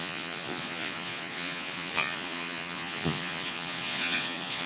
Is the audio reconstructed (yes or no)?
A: yes